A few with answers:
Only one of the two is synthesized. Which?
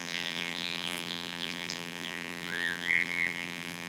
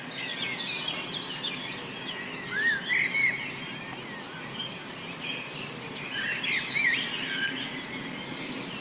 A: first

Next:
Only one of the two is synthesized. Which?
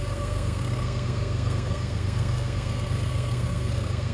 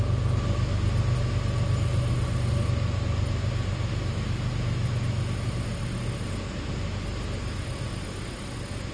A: first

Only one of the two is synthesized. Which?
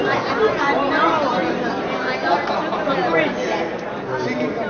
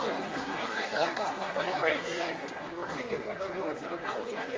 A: second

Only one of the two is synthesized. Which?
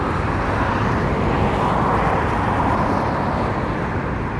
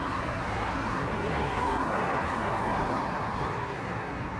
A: second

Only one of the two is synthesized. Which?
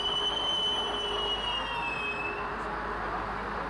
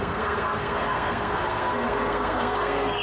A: second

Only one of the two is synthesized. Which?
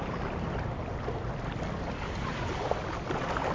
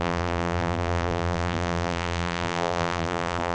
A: second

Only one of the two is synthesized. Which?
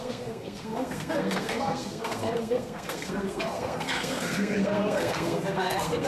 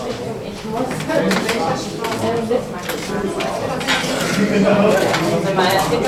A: first